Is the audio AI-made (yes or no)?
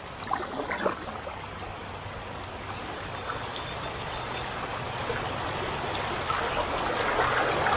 no